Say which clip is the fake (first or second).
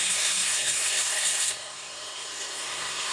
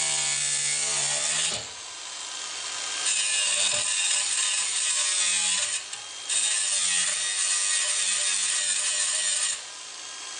first